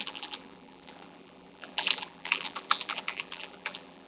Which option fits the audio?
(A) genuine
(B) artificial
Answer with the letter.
B